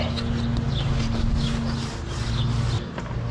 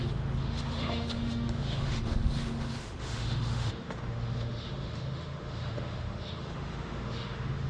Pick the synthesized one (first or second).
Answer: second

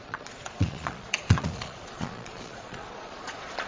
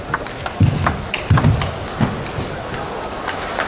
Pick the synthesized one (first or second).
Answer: first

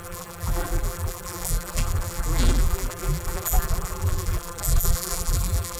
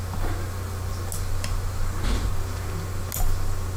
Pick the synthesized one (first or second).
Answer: first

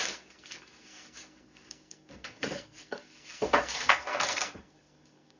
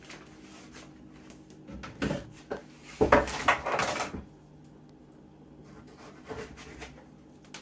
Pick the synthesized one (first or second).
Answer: first